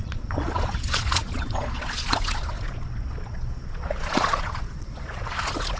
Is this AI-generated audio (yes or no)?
yes